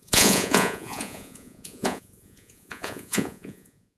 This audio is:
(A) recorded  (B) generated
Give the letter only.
B